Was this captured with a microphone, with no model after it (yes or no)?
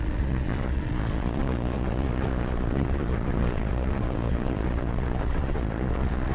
no